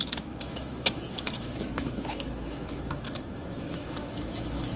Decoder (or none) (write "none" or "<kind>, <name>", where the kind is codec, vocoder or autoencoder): autoencoder, DAC-VAE